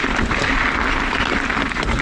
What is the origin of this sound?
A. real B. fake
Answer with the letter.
A